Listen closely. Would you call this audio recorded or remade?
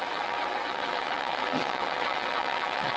remade